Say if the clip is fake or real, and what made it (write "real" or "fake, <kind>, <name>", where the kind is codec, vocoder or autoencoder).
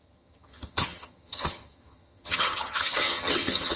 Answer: fake, vocoder, HiFi-GAN